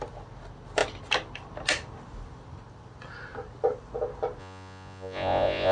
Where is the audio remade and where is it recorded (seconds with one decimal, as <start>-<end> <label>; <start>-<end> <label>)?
0.0-4.4 recorded; 4.4-5.7 remade